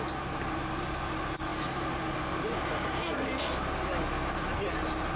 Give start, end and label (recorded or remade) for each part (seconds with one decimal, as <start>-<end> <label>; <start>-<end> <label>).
0.0-5.2 recorded